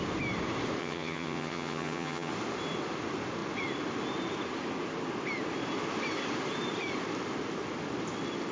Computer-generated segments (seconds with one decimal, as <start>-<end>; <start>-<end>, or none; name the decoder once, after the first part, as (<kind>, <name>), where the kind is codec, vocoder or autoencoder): 0.8-2.3 (vocoder, HiFi-GAN)